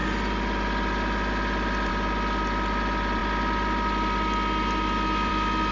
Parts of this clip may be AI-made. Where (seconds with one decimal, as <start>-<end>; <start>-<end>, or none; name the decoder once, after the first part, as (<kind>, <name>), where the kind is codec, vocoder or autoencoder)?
none